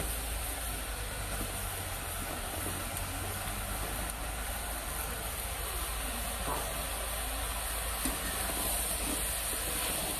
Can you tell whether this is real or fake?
real